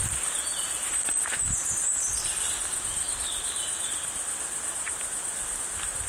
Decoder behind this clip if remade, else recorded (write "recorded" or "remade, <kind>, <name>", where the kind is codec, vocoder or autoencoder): recorded